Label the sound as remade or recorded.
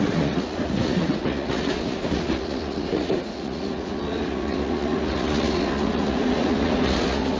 remade